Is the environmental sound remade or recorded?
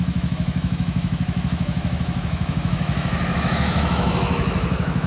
remade